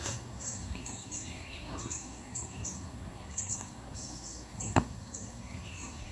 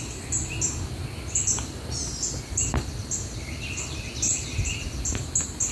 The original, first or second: second